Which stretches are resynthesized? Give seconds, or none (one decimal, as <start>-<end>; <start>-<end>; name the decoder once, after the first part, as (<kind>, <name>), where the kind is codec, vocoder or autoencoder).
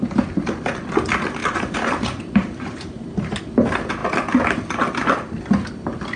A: 1.4-3.4 (vocoder, BigVGAN v2)